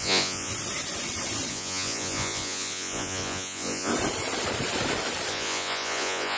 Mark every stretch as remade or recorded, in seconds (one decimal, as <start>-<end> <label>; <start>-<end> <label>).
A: 0.0-0.5 remade; 0.5-1.5 recorded; 1.5-3.9 remade; 3.9-5.3 recorded; 5.3-6.4 remade